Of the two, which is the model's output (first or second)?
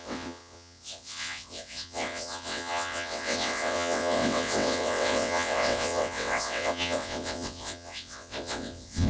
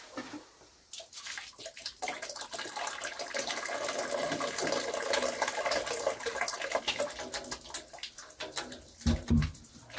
first